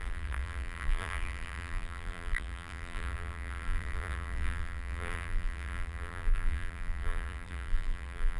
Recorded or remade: remade